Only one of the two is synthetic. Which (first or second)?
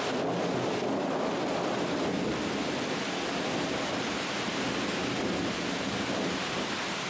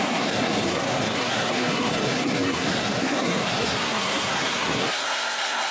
second